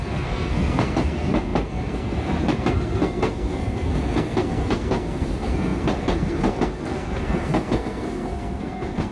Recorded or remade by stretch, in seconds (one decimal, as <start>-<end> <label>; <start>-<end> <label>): 0.0-9.1 remade